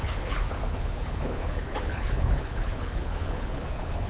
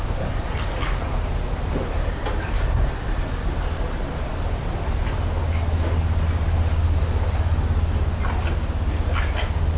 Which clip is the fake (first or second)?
first